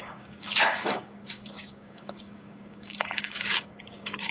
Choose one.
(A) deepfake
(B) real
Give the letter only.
A